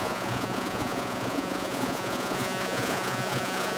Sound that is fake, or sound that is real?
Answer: fake